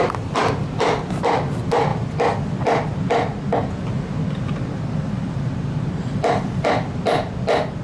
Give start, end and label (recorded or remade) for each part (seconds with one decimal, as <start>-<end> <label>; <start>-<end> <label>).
0.0-7.8 recorded